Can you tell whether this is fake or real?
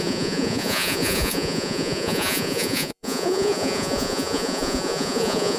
fake